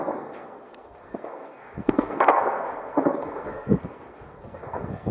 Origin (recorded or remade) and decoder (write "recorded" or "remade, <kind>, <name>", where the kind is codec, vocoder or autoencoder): remade, codec, SNAC